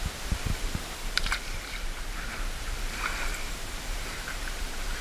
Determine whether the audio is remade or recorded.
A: remade